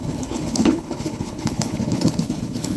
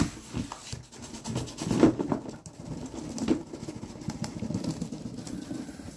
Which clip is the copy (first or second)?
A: first